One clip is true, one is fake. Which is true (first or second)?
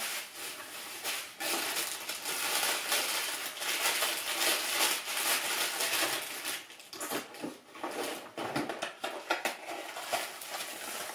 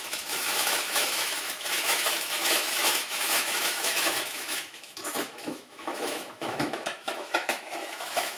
first